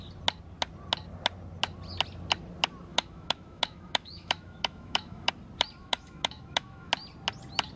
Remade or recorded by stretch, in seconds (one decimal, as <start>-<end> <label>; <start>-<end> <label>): 0.0-2.9 recorded; 2.9-5.3 remade; 5.3-5.8 recorded; 5.8-6.9 remade; 6.9-7.8 recorded